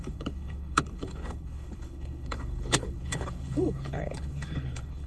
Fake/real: fake